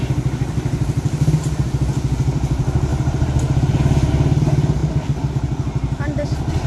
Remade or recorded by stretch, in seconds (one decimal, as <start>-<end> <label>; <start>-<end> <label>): 0.0-6.7 recorded